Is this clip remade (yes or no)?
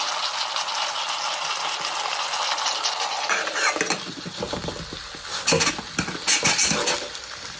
no